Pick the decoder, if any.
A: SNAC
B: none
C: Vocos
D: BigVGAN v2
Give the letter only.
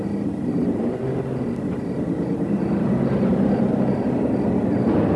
B